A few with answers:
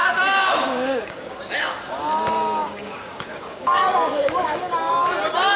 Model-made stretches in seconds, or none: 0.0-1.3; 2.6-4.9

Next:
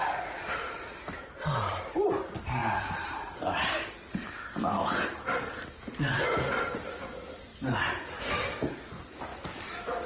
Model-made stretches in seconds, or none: 0.0-7.5; 8.9-9.3

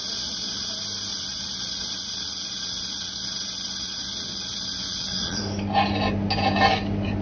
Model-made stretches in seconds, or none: 0.0-0.7; 1.1-5.4

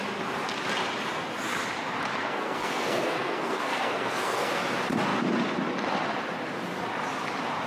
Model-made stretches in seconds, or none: 2.2-4.6